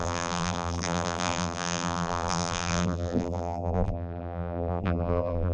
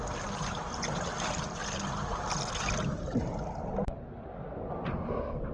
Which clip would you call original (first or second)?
second